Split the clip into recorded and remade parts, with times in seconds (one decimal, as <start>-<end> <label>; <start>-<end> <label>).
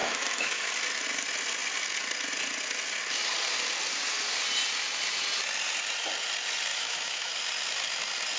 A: 0.0-0.7 remade; 0.7-6.7 recorded; 6.7-7.3 remade; 7.3-8.4 recorded